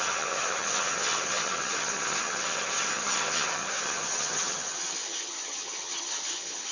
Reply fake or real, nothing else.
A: fake